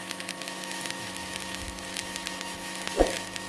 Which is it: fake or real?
fake